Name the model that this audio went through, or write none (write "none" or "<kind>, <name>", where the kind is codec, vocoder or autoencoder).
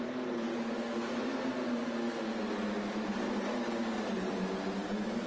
none